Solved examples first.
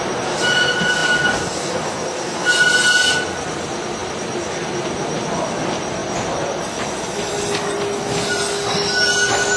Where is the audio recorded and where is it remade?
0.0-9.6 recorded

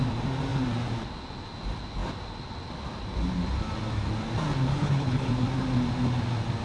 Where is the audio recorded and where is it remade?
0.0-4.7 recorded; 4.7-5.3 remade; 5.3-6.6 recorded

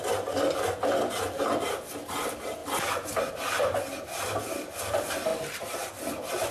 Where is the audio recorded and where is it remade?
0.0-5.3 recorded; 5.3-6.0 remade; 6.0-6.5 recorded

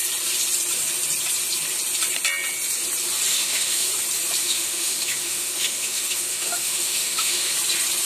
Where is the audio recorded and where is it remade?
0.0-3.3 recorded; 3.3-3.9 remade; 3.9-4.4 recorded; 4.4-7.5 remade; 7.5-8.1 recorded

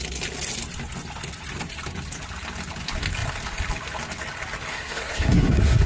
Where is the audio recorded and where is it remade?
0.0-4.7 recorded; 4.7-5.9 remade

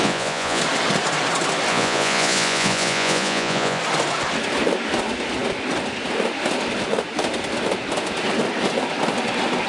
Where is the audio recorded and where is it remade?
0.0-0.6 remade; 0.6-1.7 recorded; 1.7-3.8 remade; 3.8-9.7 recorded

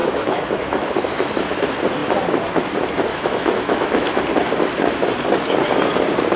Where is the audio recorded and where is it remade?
0.0-1.3 remade; 1.3-3.1 recorded; 3.1-4.2 remade; 4.2-6.4 recorded